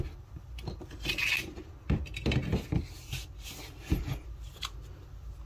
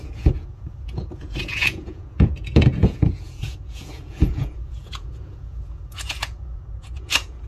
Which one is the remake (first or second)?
second